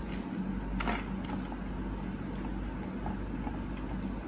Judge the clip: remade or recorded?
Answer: recorded